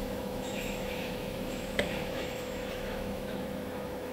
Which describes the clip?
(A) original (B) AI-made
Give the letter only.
B